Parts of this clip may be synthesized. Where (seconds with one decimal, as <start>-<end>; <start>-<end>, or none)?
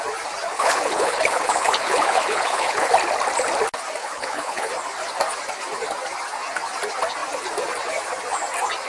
0.5-2.9; 4.0-4.7